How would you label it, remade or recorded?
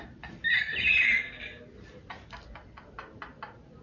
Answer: recorded